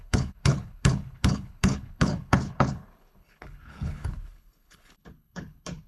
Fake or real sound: fake